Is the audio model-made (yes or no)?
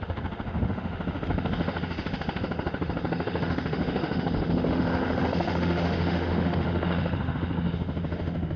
yes